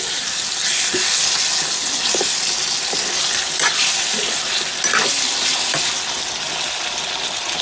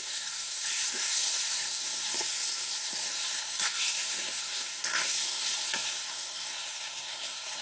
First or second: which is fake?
second